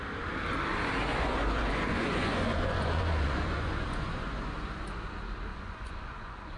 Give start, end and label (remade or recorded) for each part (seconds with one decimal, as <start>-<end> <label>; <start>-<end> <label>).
0.0-1.1 recorded; 1.1-5.1 remade; 5.1-5.5 recorded; 5.5-6.6 remade